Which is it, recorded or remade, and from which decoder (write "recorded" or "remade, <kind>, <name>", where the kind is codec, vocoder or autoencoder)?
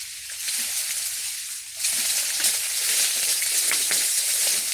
remade, vocoder, BigVGAN v2